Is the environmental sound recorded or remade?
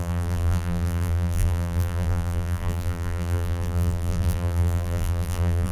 remade